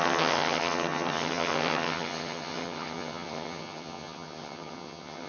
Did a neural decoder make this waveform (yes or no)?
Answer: yes